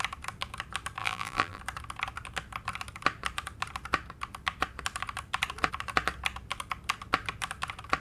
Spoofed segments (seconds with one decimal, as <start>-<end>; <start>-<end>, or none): 1.0-1.6

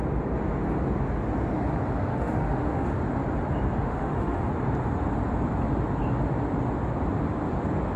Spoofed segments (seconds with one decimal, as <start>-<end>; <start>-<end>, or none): 2.1-3.0; 3.8-4.5